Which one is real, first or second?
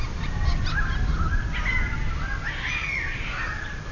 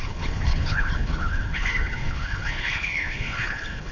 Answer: first